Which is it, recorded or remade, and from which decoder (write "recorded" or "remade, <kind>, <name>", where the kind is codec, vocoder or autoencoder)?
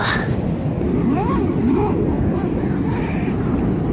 recorded